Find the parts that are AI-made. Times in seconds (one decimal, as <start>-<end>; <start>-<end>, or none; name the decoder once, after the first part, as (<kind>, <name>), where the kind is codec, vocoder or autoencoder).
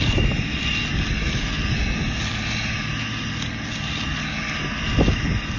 none